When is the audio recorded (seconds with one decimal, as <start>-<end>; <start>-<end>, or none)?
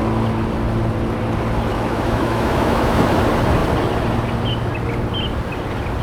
0.0-1.7; 3.2-6.0